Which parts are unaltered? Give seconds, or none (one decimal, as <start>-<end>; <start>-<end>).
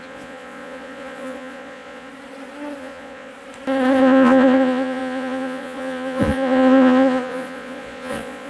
2.1-2.8; 3.3-4.0